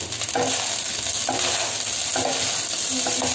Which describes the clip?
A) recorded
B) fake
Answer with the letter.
A